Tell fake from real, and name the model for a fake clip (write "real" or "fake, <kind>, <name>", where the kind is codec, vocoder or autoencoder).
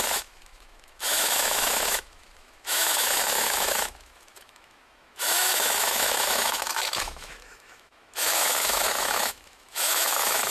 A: fake, autoencoder, DAC-VAE